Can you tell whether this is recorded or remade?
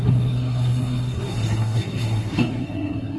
remade